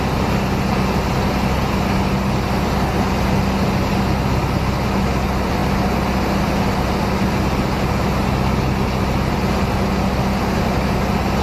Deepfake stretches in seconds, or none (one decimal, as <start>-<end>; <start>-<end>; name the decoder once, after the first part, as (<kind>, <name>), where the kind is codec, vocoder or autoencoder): none